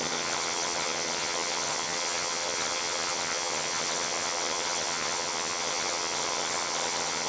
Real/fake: fake